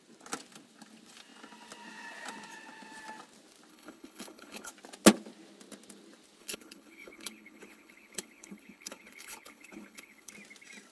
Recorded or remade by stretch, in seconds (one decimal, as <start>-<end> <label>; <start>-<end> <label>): 0.0-3.7 recorded; 3.7-4.7 remade; 4.7-6.4 recorded; 6.4-10.3 remade; 10.3-10.9 recorded